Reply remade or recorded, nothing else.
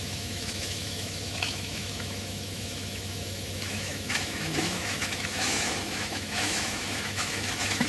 remade